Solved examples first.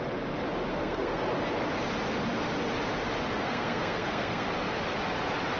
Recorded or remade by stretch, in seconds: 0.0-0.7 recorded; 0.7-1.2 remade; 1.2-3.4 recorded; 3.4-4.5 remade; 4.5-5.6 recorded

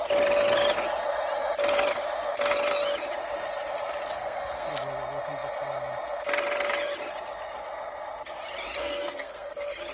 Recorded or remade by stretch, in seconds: 0.0-4.1 recorded; 4.1-4.7 remade; 4.7-8.8 recorded; 8.8-9.5 remade; 9.5-9.9 recorded